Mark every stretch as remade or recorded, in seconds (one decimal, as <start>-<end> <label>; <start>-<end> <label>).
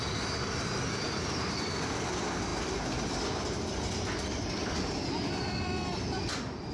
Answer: 0.0-6.7 recorded